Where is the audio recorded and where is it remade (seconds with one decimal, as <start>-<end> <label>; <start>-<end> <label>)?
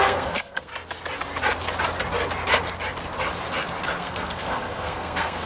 0.0-0.7 remade; 0.7-4.0 recorded; 4.0-5.5 remade